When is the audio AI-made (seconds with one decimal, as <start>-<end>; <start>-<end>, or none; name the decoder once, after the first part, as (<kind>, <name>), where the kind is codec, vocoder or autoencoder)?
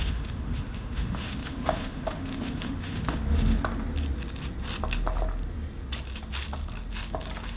0.0-3.2 (autoencoder, DAC-VAE)